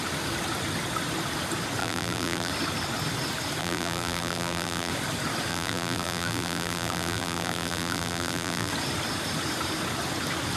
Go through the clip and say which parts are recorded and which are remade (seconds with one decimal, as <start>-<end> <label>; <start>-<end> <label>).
0.0-1.8 recorded; 1.8-2.5 remade; 2.5-3.6 recorded; 3.6-4.9 remade; 4.9-5.5 recorded; 5.5-8.7 remade; 8.7-10.6 recorded